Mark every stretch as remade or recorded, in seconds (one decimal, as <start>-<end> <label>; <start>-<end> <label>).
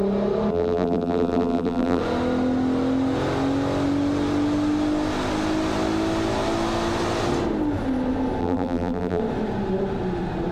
0.0-0.5 recorded; 0.5-2.0 remade; 2.0-8.4 recorded; 8.4-9.2 remade; 9.2-10.5 recorded